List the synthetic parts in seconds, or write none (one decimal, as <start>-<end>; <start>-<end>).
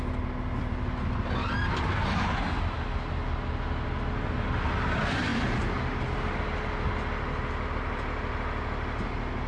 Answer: 5.3-6.4